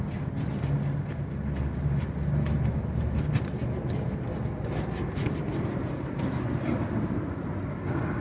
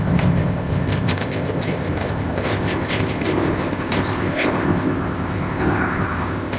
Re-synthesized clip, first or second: second